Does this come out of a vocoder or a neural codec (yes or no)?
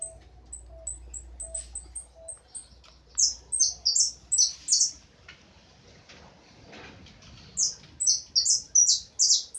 no